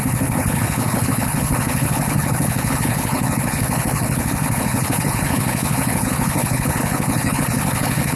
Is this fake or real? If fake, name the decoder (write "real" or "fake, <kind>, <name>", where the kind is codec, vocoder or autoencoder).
fake, codec, HILCodec